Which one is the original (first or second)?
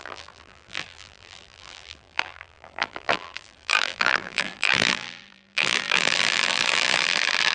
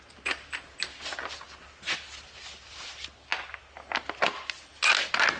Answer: second